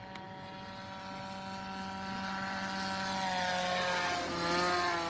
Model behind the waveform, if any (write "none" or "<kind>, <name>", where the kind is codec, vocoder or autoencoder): none